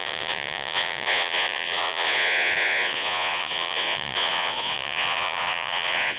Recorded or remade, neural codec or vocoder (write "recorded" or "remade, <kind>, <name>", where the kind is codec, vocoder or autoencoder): remade, vocoder, Vocos